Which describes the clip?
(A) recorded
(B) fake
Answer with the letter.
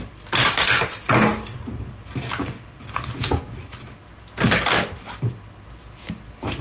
A